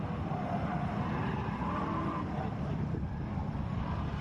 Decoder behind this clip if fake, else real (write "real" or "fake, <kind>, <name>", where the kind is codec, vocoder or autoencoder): real